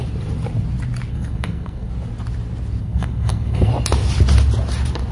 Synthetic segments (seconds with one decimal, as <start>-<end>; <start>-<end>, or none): 1.1-1.9; 2.8-3.7